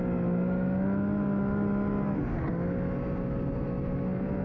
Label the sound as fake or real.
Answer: real